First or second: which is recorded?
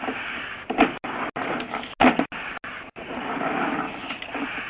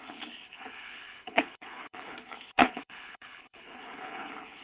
first